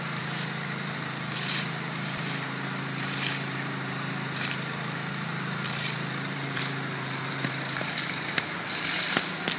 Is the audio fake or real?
fake